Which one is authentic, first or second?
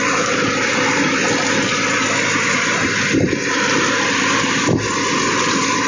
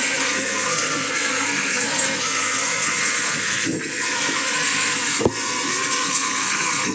first